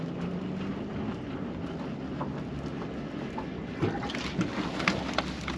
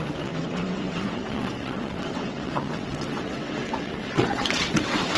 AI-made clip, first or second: second